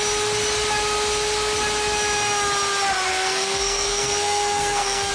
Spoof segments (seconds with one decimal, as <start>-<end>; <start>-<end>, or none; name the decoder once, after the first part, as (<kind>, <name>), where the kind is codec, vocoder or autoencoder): 3.1-5.1 (codec, SNAC)

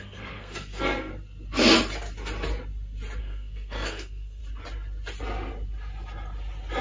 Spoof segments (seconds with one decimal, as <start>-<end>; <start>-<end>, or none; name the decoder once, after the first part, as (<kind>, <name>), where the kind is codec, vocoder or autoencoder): 0.0-1.1 (codec, SNAC); 3.2-4.4